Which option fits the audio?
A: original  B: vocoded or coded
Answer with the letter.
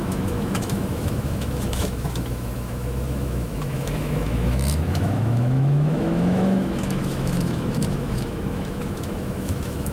B